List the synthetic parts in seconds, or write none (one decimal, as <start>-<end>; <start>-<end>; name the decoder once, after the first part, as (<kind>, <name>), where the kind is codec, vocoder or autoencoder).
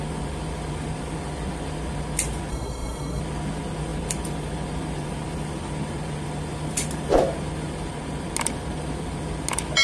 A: 2.5-3.2 (codec, SNAC)